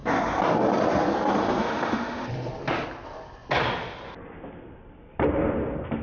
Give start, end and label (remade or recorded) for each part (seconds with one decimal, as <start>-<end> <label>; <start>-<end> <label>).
0.0-1.6 recorded; 1.6-2.3 remade; 2.3-6.0 recorded